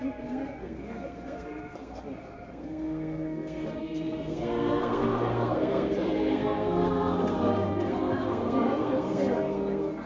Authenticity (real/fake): fake